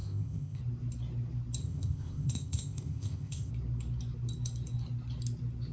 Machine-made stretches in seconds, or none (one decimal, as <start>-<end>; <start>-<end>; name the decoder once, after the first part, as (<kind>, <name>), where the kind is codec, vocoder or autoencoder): 0.0-0.6 (codec, ZipCodec); 1.6-3.5

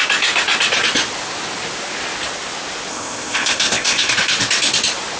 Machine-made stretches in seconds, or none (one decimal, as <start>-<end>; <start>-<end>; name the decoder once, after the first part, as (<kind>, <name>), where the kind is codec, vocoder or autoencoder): 2.9-4.1 (codec, ZipCodec)

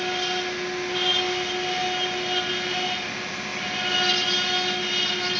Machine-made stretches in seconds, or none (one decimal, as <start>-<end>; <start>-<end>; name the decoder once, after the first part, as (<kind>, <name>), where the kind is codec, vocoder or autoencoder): none

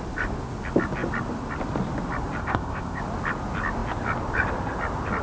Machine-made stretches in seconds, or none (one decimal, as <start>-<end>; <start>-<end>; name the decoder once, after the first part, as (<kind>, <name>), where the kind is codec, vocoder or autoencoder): 2.4-3.0 (codec, ZipCodec)

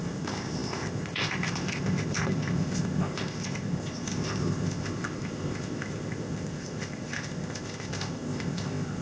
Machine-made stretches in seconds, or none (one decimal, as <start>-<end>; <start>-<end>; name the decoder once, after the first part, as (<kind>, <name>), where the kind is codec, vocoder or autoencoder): 0.0-9.0 (codec, ZipCodec)

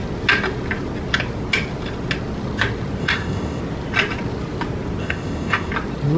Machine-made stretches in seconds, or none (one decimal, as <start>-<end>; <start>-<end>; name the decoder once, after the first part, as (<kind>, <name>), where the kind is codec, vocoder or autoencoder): 3.0-3.6 (codec, ZipCodec); 5.0-5.7

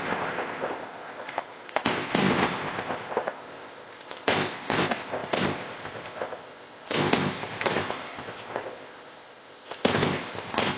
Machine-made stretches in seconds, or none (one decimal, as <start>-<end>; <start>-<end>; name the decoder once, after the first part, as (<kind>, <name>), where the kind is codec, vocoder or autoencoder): 0.0-10.8 (codec, ZipCodec)

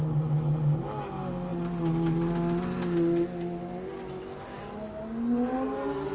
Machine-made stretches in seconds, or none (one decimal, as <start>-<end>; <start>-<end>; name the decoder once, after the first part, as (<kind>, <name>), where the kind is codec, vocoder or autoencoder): none